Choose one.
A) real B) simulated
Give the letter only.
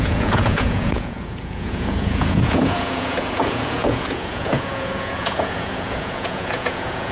B